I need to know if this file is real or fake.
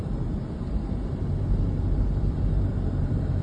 fake